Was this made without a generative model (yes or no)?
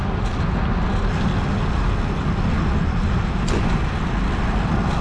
yes